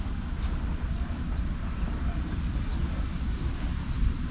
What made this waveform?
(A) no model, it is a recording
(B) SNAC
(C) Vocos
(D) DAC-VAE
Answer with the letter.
A